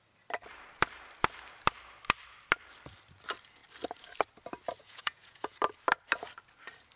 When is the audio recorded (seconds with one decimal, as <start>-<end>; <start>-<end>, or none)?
0.0-4.8; 5.6-7.0